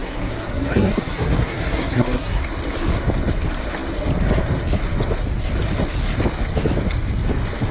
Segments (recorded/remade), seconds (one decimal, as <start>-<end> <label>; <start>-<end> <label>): 0.0-2.4 remade; 2.4-7.7 recorded